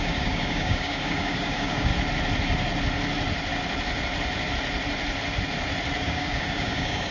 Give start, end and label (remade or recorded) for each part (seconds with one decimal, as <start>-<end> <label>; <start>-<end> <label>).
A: 0.0-1.9 remade; 1.9-6.0 recorded; 6.0-7.1 remade